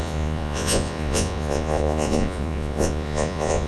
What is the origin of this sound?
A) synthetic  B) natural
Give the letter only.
A